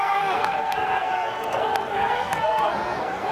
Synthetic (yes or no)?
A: yes